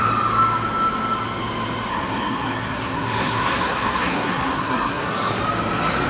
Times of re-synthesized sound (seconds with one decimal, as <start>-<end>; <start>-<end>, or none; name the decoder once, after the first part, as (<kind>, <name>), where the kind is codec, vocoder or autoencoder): 1.9-5.4 (codec, SNAC)